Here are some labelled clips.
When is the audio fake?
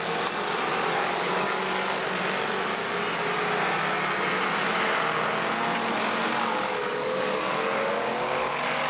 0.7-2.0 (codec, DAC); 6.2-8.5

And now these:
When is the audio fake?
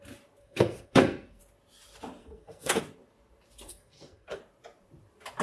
0.4-1.4 (codec, SNAC); 2.2-2.8; 3.7-4.4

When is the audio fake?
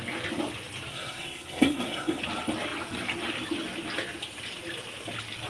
0.9-2.2 (codec, SNAC)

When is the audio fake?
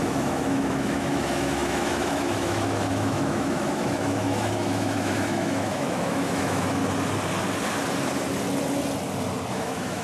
0.0-6.8 (autoencoder, DAC-VAE); 9.5-10.0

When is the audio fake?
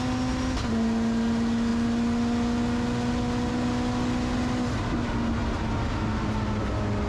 none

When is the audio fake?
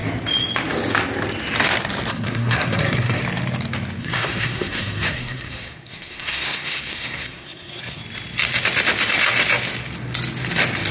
2.1-3.2 (codec, SNAC); 4.0-8.0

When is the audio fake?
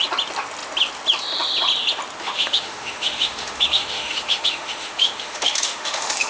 2.2-6.3 (autoencoder, DAC-VAE)